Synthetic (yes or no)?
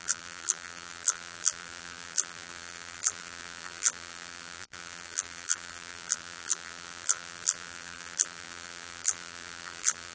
yes